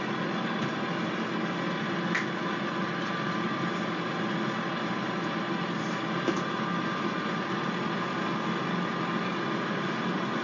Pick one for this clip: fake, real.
real